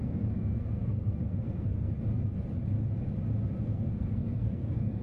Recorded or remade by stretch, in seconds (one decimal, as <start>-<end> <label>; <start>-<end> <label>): 0.0-1.9 remade; 1.9-3.6 recorded; 3.6-5.0 remade